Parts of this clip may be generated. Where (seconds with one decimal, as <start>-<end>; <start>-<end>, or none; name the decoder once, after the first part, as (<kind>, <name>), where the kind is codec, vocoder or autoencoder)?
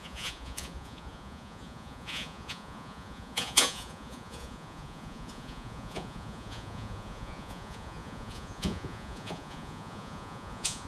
0.0-10.9 (vocoder, Vocos)